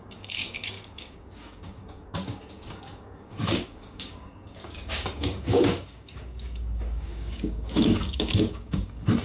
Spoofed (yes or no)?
yes